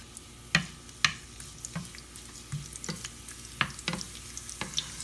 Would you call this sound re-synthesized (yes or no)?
no